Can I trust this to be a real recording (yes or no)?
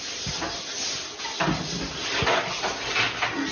yes